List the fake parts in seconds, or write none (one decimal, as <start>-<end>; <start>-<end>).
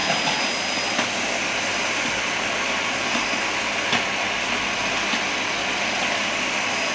none